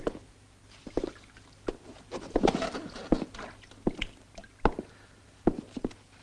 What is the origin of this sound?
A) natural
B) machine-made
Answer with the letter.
A